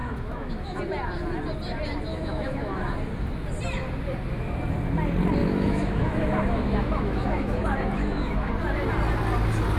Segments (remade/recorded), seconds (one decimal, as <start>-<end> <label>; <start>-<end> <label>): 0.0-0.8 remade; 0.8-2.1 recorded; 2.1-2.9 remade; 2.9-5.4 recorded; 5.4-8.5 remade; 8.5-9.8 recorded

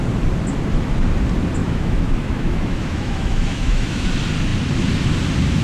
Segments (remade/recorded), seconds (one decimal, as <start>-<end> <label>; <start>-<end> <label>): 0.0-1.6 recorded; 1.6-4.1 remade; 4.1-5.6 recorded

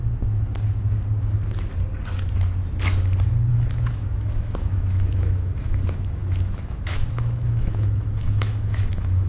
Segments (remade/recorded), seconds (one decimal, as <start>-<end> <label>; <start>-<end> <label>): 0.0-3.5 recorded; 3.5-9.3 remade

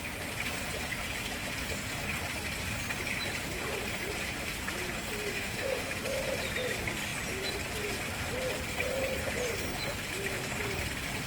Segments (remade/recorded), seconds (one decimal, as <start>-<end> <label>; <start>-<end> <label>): 0.0-5.3 recorded; 5.3-5.9 remade; 5.9-11.3 recorded

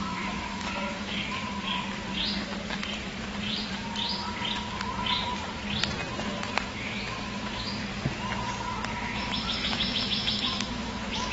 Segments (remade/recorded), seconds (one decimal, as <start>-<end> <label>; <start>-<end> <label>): 0.0-1.2 remade; 1.2-6.2 recorded; 6.2-7.8 remade; 7.8-8.9 recorded; 8.9-11.3 remade

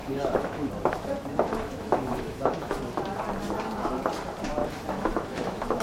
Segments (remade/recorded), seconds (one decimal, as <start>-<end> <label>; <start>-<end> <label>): 0.0-0.7 remade; 0.7-1.3 recorded; 1.3-2.8 remade; 2.8-4.6 recorded; 4.6-5.8 remade